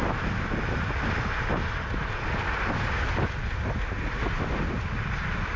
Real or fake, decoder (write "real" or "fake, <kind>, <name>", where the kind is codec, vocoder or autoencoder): real